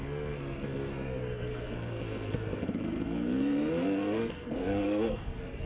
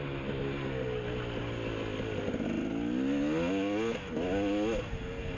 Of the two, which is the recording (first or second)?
second